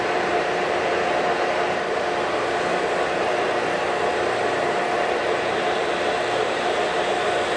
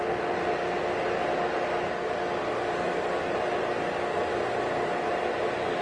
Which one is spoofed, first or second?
first